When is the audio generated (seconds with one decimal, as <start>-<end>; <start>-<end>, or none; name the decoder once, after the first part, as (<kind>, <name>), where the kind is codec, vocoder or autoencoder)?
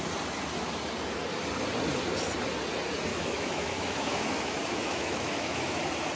3.1-5.8 (autoencoder, DAC-VAE)